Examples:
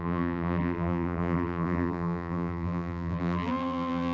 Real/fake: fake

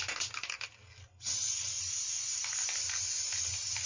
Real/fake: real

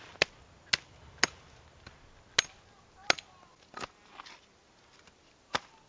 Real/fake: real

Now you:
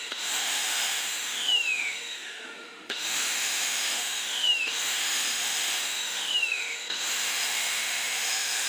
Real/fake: fake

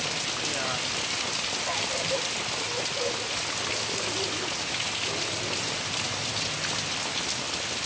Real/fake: real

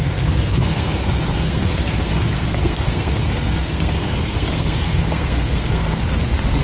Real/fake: fake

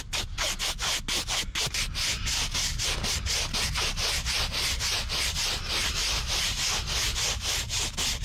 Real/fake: real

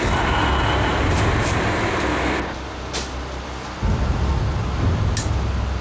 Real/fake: real